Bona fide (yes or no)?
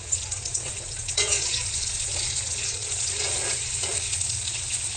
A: no